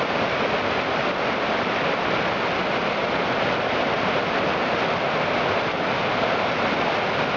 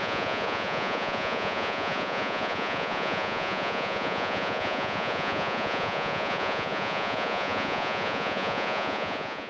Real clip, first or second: first